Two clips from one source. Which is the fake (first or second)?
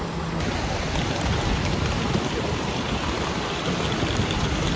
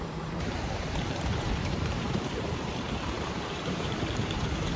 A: second